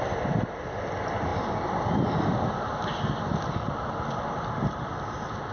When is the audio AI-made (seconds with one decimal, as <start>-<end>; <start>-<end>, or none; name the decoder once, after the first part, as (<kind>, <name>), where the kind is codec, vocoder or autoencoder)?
none